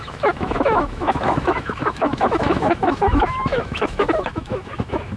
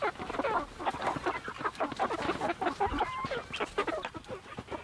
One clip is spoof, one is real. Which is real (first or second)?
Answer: second